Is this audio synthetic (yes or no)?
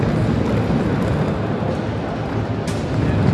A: no